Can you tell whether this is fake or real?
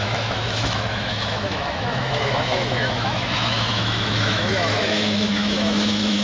fake